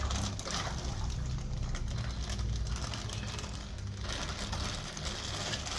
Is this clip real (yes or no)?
yes